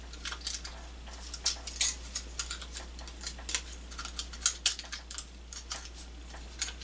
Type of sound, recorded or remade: recorded